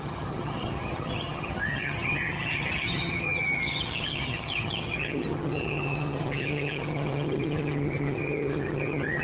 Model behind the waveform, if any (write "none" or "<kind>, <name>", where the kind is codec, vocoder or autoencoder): vocoder, HiFi-GAN